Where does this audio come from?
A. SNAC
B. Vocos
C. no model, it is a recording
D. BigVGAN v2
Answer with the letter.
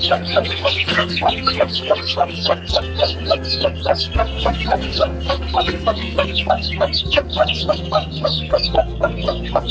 A